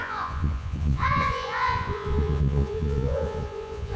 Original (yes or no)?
no